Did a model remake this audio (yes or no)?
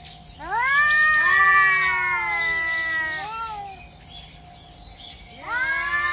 no